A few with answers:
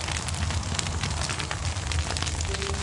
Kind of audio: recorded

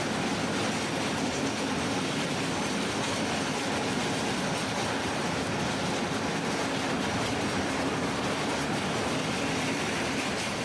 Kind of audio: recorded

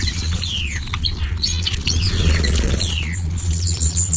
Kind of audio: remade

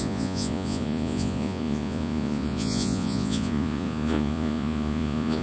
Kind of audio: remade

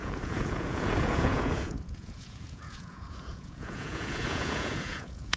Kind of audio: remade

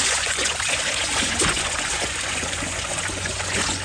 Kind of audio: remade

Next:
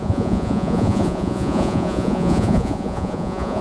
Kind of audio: remade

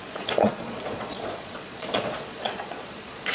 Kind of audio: remade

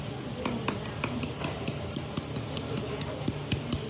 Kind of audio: recorded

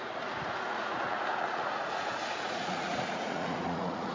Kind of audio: remade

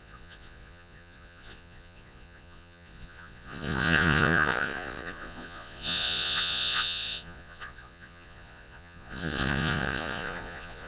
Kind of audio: remade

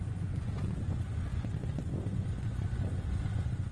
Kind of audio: remade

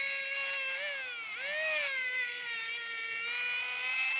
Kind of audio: recorded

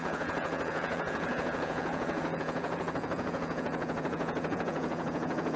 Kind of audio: remade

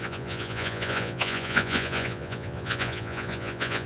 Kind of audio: remade